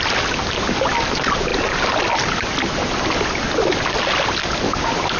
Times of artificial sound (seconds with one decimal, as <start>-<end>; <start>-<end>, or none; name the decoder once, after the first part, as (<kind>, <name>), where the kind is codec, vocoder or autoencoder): none